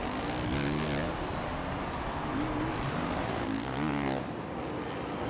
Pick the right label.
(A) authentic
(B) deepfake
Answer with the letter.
A